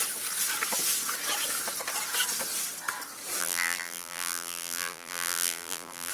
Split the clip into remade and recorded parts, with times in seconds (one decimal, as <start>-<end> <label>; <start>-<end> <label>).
0.0-3.4 recorded; 3.4-6.1 remade